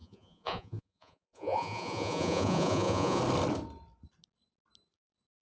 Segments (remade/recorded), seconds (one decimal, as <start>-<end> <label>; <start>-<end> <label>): 0.0-3.2 remade; 3.2-5.4 recorded